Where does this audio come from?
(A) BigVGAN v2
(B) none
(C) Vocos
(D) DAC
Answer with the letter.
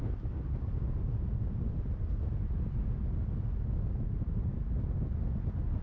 B